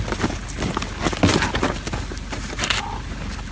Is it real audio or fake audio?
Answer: real